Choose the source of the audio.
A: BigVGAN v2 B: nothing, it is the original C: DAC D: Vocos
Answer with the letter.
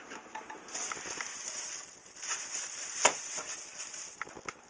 B